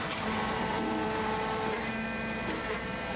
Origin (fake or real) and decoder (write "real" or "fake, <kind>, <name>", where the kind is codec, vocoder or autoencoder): fake, vocoder, BigVGAN v2